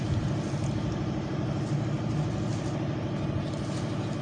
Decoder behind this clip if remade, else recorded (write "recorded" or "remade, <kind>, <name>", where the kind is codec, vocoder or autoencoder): recorded